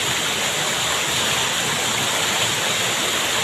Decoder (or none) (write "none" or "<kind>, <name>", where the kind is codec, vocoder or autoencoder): none